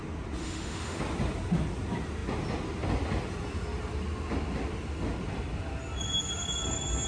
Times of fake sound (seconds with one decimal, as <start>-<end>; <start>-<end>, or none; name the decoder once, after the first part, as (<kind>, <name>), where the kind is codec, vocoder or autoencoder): 0.4-1.0 (autoencoder, DAC-VAE)